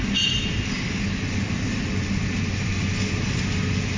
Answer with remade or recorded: recorded